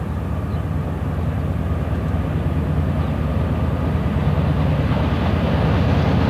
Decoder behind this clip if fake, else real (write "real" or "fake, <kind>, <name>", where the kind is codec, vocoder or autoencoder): real